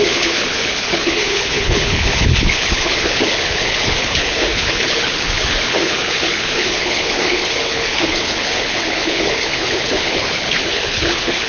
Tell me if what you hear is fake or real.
fake